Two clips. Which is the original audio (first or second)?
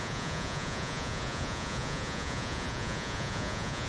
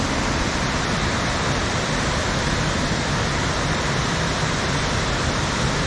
second